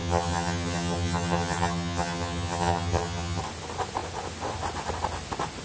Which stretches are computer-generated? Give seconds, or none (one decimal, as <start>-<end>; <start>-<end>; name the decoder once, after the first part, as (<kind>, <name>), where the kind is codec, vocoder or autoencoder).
0.0-3.4 (vocoder, HiFi-GAN)